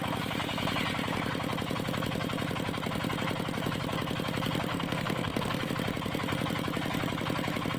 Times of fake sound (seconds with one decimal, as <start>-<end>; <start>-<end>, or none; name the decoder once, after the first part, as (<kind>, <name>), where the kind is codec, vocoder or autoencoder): 4.7-5.7 (codec, SNAC)